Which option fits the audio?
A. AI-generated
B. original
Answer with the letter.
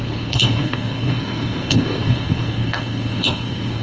A